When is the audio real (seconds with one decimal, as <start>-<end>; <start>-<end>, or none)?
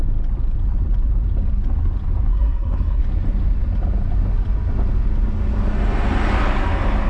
0.0-2.3; 3.0-7.1